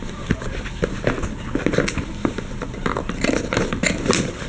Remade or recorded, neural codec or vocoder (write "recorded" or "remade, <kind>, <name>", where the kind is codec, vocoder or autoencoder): recorded